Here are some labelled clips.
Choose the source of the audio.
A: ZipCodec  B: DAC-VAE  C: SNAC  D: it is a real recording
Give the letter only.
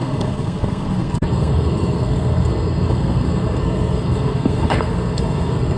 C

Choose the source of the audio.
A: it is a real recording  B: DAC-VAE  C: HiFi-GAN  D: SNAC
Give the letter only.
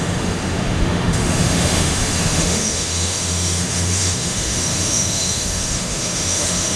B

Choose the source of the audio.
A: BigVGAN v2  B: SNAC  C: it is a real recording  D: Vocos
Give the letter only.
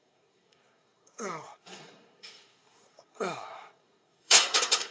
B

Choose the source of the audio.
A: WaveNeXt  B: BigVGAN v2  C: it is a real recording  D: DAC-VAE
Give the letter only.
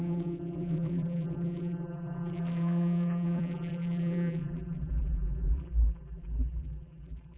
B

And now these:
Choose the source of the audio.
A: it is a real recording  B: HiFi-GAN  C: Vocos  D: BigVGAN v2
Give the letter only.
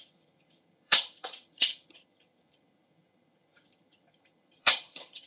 B